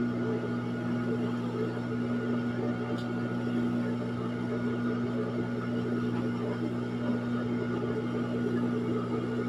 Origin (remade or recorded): recorded